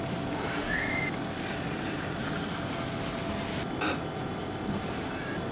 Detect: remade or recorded recorded